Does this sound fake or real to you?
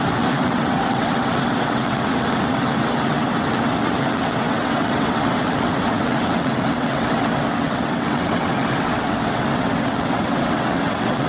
fake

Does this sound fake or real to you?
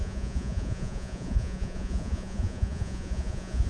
fake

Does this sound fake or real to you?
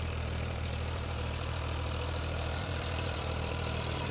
fake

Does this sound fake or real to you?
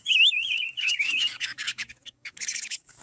fake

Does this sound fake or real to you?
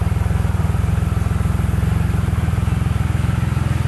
real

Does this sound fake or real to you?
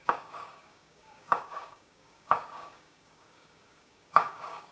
fake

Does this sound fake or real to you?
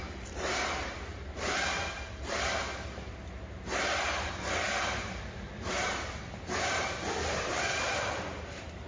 fake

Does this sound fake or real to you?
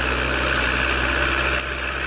real